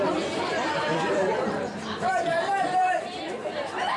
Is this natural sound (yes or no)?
no